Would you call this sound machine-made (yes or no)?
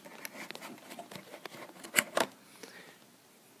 no